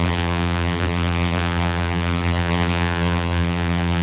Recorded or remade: remade